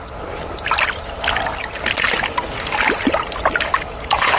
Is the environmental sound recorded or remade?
recorded